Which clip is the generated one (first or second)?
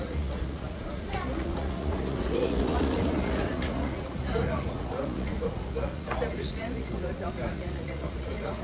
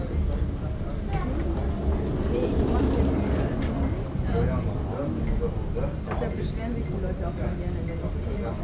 first